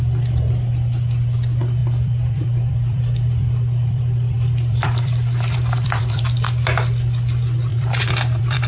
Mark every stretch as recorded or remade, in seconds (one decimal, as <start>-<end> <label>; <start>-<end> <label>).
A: 0.0-1.8 recorded; 1.8-6.2 remade; 6.2-7.7 recorded; 7.7-8.7 remade